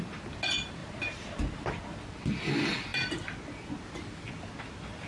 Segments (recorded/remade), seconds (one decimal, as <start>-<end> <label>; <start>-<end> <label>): 0.0-0.8 recorded; 0.8-1.8 remade; 1.8-5.1 recorded

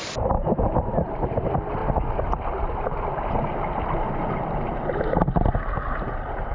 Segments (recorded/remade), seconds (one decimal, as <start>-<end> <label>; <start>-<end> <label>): 0.0-1.8 remade; 1.8-2.6 recorded; 2.6-6.5 remade

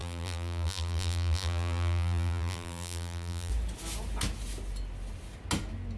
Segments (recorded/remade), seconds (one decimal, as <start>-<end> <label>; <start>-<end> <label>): 0.0-3.5 remade; 3.5-6.0 recorded

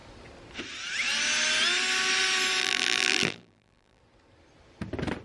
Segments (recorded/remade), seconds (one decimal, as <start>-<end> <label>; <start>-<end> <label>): 0.0-2.6 recorded; 2.6-4.0 remade; 4.0-5.2 recorded

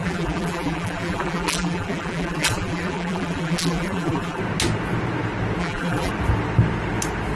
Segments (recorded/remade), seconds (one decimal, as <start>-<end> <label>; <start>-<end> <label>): 0.0-4.4 remade; 4.4-5.6 recorded; 5.6-6.1 remade; 6.1-7.4 recorded

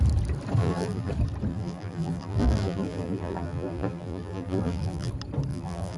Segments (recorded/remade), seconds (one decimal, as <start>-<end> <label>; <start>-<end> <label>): 0.0-0.6 recorded; 0.6-1.1 remade; 1.1-1.5 recorded; 1.5-5.1 remade; 5.1-5.5 recorded; 5.5-6.0 remade